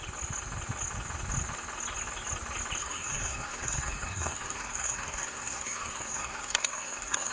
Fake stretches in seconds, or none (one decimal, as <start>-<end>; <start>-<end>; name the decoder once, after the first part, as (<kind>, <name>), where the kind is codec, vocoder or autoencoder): 2.8-7.3 (codec, SNAC)